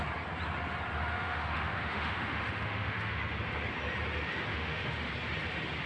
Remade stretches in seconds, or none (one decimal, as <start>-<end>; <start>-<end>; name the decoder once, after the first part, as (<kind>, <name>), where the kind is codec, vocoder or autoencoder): 1.1-3.2 (autoencoder, DAC-VAE); 4.5-5.1